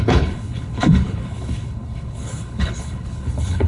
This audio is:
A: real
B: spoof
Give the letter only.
B